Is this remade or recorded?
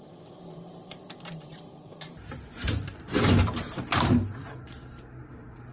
remade